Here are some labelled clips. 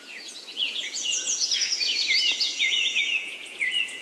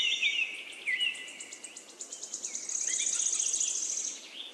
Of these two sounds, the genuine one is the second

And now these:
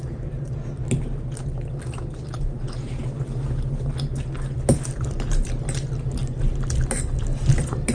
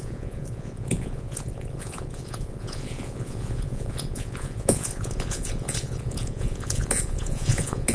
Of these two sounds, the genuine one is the first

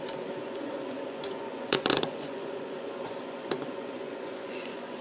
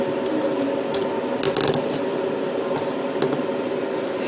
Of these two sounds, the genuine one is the second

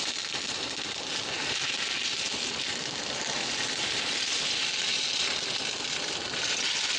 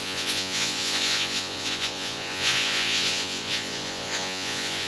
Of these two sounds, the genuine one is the first